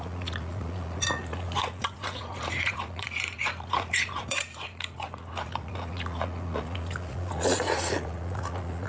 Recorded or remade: remade